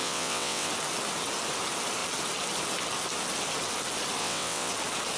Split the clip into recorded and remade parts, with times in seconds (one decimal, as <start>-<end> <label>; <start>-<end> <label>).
0.0-0.7 remade; 0.7-4.2 recorded; 4.2-4.7 remade; 4.7-5.2 recorded